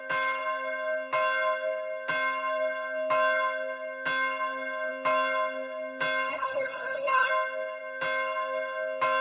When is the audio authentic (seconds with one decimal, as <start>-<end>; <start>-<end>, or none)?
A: 0.0-6.3; 7.3-9.2